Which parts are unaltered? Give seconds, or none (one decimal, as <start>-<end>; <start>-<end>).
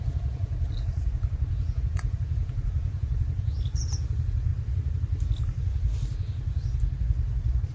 4.5-7.7